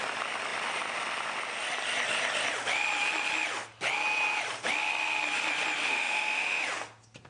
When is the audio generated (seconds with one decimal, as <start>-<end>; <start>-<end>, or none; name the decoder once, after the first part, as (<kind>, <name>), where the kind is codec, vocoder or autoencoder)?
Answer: 5.8-6.6 (autoencoder, DAC-VAE)